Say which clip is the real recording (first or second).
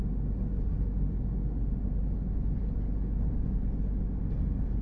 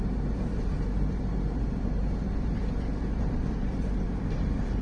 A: first